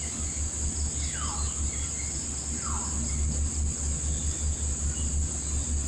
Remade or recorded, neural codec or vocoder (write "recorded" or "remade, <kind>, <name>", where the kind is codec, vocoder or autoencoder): recorded